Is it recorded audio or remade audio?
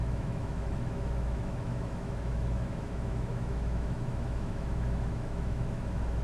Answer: remade